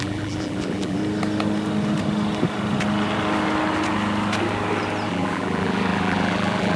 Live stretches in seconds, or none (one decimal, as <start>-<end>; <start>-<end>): 1.0-5.1